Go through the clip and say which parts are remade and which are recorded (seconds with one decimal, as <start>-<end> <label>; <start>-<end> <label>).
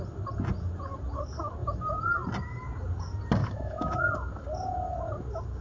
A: 0.0-3.4 recorded; 3.4-4.0 remade; 4.0-5.6 recorded